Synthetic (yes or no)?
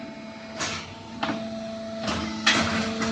no